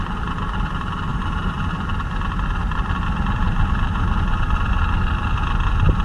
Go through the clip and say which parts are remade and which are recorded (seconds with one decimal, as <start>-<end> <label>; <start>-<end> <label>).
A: 0.0-6.0 recorded

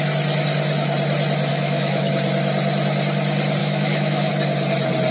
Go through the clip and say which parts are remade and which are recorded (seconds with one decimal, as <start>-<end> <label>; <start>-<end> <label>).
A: 0.0-1.5 recorded; 1.5-2.1 remade; 2.1-3.6 recorded; 3.6-4.3 remade; 4.3-5.1 recorded

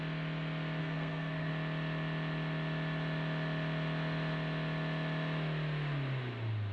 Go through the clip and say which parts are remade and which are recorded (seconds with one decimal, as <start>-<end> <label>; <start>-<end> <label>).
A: 0.0-0.8 recorded; 0.8-1.5 remade; 1.5-6.7 recorded

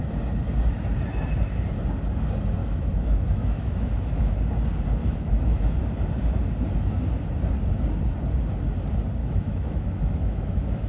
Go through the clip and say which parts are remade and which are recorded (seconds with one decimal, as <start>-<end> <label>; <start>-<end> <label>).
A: 0.0-2.6 recorded; 2.6-4.3 remade; 4.3-5.0 recorded; 5.0-5.8 remade; 5.8-9.2 recorded; 9.2-10.9 remade

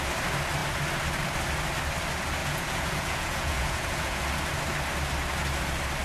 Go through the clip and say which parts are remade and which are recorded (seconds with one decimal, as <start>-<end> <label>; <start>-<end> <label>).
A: 0.0-2.4 recorded; 2.4-4.2 remade; 4.2-6.0 recorded

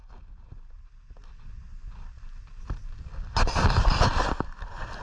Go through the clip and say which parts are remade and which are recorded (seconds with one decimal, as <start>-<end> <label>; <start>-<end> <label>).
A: 0.0-5.0 recorded

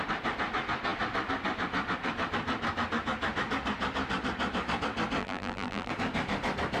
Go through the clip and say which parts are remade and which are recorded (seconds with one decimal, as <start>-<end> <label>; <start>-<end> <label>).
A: 0.0-5.2 recorded; 5.2-5.9 remade; 5.9-6.8 recorded

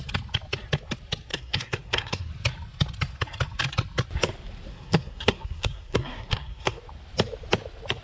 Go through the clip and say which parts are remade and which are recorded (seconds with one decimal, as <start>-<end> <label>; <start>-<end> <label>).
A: 0.0-1.3 recorded; 1.3-2.3 remade; 2.3-4.7 recorded; 4.7-6.8 remade; 6.8-8.0 recorded